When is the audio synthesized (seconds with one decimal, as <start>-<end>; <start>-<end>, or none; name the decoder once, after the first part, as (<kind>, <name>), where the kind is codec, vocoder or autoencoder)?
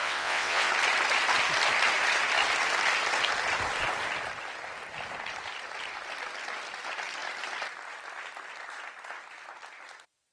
0.0-0.7 (vocoder, WaveNeXt)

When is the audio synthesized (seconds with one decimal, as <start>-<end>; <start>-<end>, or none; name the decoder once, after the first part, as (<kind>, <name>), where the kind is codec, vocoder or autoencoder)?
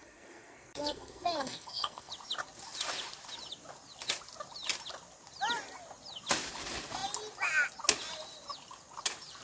0.0-2.1 (codec, SNAC)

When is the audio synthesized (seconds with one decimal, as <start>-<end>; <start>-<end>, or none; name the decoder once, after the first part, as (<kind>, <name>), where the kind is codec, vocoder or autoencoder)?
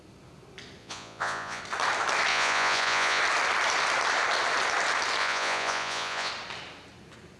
0.8-1.6 (vocoder, Vocos); 2.3-3.2; 5.2-6.3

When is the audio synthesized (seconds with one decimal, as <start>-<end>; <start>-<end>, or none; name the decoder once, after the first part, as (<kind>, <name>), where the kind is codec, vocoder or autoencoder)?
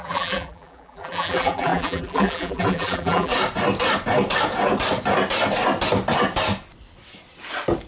0.0-3.3 (vocoder, BigVGAN v2)